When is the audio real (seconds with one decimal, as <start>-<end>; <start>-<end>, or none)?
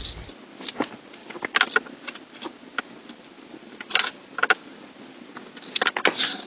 0.0-6.5